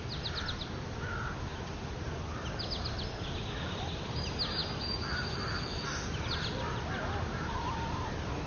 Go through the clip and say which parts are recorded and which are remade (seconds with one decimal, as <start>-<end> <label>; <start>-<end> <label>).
0.0-8.5 recorded